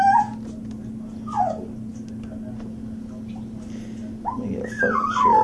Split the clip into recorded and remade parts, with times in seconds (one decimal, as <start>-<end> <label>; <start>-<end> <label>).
0.0-5.4 recorded